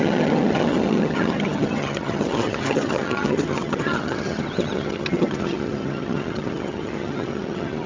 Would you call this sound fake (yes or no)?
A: yes